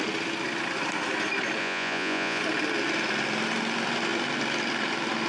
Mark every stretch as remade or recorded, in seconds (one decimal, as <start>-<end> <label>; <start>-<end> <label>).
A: 0.0-1.6 recorded; 1.6-2.4 remade; 2.4-5.3 recorded